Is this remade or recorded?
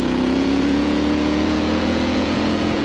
remade